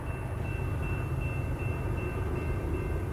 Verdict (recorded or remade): recorded